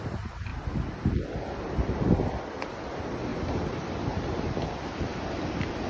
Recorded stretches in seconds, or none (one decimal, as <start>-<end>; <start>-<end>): 0.0-3.3; 5.5-5.9